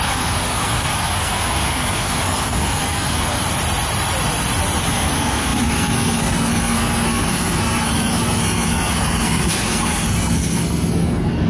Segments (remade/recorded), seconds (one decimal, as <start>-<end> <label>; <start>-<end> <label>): 0.0-3.4 remade; 3.4-4.8 recorded; 4.8-11.5 remade